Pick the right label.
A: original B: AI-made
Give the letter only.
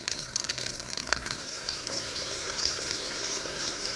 B